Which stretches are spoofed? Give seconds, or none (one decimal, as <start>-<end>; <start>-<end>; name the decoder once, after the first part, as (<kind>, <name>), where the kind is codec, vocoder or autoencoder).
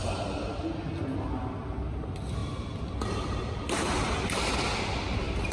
none